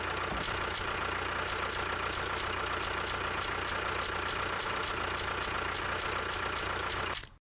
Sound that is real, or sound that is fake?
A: real